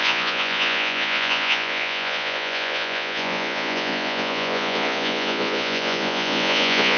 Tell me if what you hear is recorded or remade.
remade